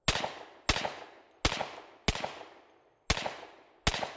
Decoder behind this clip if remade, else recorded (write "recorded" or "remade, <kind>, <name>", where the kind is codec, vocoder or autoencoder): recorded